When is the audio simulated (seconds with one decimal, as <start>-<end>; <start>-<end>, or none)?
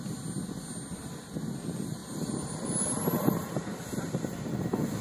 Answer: none